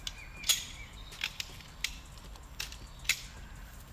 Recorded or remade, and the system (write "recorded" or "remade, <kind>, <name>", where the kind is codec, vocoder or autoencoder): recorded